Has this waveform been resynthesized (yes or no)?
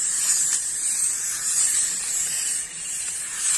yes